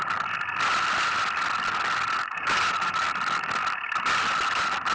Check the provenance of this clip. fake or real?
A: real